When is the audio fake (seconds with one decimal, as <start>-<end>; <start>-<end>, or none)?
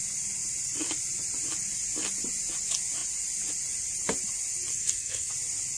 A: 4.7-5.3